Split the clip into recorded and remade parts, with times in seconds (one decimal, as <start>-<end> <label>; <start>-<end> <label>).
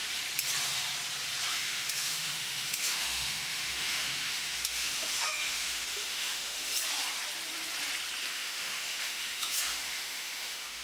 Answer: 0.0-1.5 recorded; 1.5-6.7 remade; 6.7-8.3 recorded; 8.3-10.8 remade